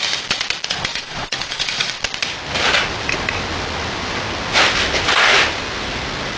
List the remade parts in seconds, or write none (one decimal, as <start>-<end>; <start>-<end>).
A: 0.9-2.0